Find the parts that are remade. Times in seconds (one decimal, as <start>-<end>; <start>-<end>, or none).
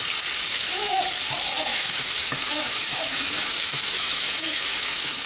0.5-1.0; 1.7-5.3